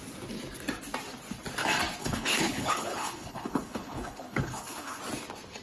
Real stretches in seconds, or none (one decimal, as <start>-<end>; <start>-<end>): 0.0-2.0; 5.0-5.6